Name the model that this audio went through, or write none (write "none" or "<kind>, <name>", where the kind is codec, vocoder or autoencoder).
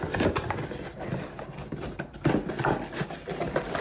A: none